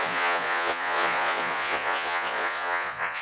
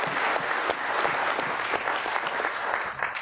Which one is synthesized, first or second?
first